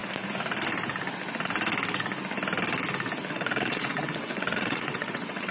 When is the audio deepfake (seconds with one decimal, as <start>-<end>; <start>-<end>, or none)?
3.3-5.5